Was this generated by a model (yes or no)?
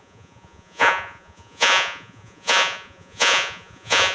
yes